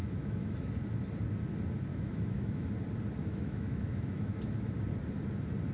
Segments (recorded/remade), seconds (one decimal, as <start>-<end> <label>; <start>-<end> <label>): 0.0-0.7 remade; 0.7-1.9 recorded; 1.9-2.7 remade; 2.7-3.2 recorded; 3.2-4.4 remade; 4.4-5.7 recorded